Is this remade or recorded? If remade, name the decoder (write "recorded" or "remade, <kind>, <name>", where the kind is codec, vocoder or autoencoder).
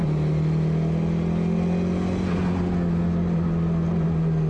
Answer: recorded